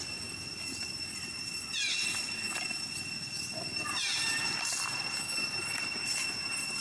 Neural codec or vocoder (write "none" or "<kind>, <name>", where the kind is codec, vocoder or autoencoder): none